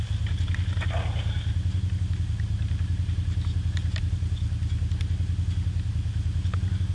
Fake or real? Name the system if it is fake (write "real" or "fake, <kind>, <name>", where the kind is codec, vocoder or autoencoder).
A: real